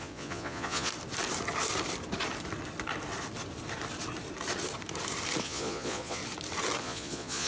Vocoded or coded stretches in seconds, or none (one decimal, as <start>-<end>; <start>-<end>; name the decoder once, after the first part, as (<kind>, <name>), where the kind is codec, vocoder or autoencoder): 0.0-0.9 (vocoder, Vocos); 5.4-6.2; 6.8-7.5